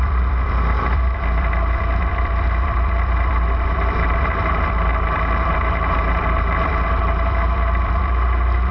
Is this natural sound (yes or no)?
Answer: no